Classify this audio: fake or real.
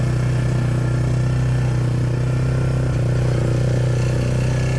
real